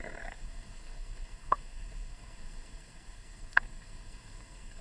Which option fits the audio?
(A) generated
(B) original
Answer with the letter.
A